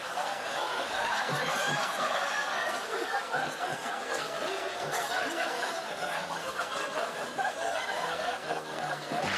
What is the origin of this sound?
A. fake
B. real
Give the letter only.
A